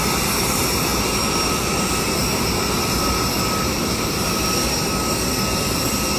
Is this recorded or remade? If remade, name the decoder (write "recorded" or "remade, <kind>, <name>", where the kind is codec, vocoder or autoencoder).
recorded